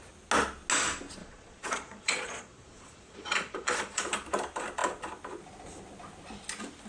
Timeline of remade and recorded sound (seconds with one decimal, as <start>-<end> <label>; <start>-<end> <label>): 0.0-1.2 recorded; 1.2-4.0 remade; 4.0-6.9 recorded